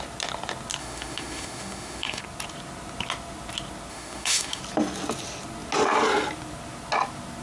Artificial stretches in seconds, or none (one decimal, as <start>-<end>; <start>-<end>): 0.8-2.2; 3.9-4.6